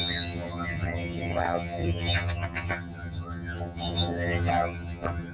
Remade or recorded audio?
remade